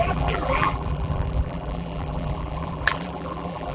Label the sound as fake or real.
fake